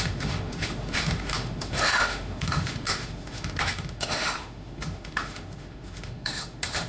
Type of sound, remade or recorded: remade